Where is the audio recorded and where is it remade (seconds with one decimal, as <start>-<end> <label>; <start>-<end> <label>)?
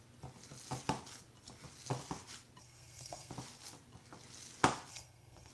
0.0-2.6 recorded; 2.6-3.3 remade; 3.3-4.9 recorded; 4.9-5.5 remade